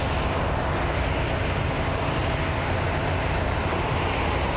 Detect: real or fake real